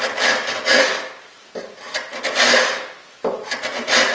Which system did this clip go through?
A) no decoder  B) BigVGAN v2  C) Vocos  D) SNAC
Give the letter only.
A